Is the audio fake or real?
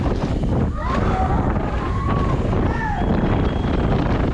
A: real